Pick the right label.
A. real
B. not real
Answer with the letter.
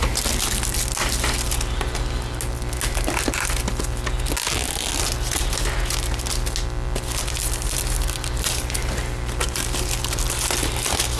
A